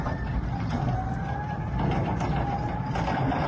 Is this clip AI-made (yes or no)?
yes